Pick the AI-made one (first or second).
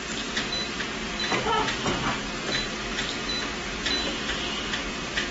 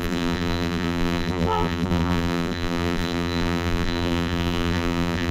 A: second